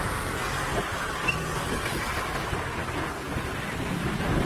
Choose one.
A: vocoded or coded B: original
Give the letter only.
B